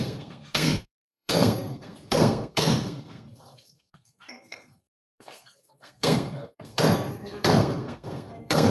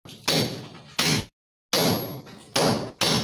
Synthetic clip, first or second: first